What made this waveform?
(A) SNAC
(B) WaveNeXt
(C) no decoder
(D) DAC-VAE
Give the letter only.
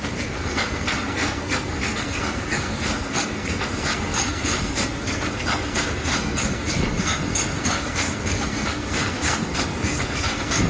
A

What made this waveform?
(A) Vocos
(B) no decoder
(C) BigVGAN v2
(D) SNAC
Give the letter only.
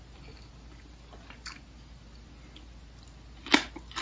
B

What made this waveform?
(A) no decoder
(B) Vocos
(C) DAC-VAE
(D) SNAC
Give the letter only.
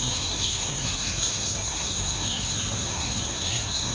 D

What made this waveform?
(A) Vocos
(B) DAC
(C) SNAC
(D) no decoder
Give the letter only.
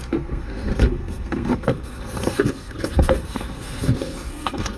C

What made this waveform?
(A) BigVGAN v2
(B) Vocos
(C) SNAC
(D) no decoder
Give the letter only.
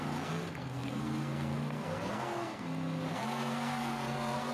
C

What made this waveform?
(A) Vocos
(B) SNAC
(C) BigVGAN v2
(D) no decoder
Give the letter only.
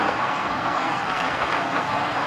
B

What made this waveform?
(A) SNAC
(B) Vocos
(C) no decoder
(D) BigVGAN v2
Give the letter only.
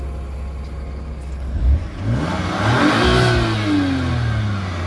C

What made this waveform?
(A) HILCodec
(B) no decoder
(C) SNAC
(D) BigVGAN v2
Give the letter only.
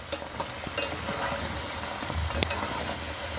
B